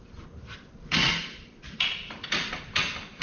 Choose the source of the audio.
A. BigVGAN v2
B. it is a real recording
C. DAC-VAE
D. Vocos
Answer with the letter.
B